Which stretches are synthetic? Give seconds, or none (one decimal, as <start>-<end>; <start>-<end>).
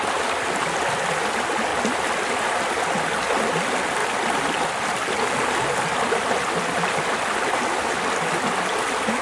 none